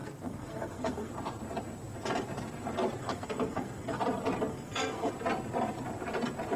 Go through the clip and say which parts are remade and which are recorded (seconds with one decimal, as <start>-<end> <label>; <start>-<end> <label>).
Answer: 0.0-1.1 remade; 1.1-3.0 recorded; 3.0-4.0 remade; 4.0-4.5 recorded; 4.5-5.1 remade; 5.1-6.6 recorded